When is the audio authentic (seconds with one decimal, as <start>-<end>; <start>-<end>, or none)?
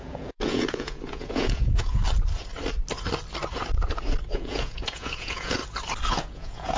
2.0-4.3; 5.6-6.1